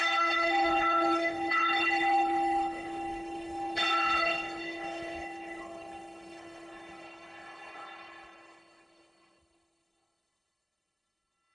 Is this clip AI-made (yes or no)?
yes